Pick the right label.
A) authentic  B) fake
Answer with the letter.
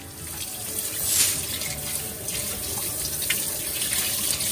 A